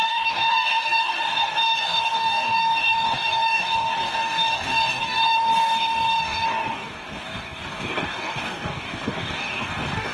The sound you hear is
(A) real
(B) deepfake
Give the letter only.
B